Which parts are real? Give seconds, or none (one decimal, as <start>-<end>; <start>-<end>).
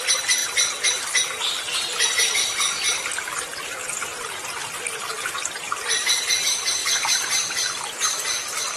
0.0-4.1; 5.0-6.8; 7.7-8.8